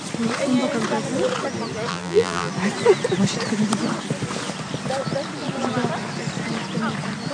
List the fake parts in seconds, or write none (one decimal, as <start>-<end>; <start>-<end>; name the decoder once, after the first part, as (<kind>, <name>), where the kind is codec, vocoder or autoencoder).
1.9-2.5 (vocoder, BigVGAN v2)